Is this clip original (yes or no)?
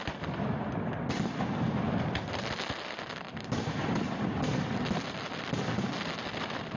yes